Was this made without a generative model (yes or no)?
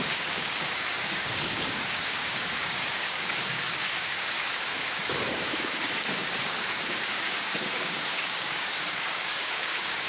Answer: no